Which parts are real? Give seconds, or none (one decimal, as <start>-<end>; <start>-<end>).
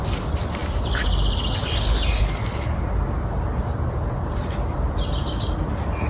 0.0-6.1